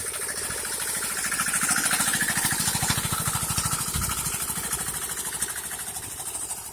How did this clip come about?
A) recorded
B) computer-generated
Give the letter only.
A